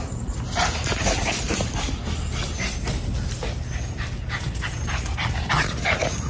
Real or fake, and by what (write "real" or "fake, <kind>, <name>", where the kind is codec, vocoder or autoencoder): real